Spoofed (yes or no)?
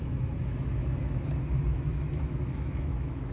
yes